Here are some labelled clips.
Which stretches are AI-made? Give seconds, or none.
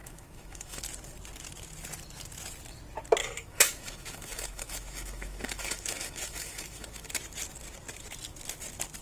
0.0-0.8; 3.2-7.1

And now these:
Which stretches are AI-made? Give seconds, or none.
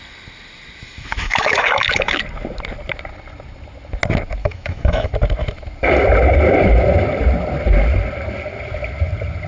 0.8-2.2; 4.4-5.1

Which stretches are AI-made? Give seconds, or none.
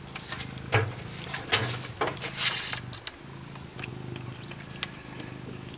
none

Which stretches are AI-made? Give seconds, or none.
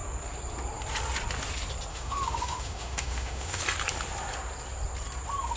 1.9-3.6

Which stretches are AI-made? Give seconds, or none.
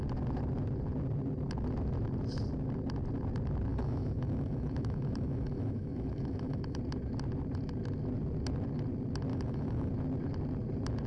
3.7-6.8; 9.3-9.9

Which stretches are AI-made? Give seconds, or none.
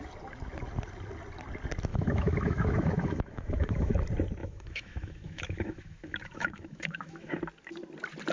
1.9-3.9; 4.4-7.4